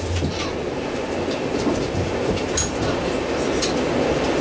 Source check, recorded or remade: recorded